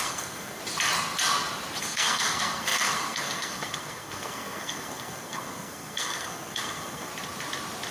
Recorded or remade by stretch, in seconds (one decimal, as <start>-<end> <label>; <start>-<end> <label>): 0.0-0.6 remade; 0.6-1.8 recorded; 1.8-7.1 remade; 7.1-7.9 recorded